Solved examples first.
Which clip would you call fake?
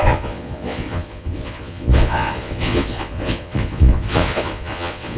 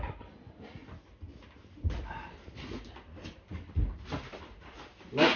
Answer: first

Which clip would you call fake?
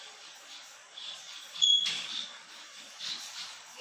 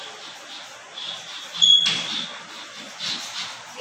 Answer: first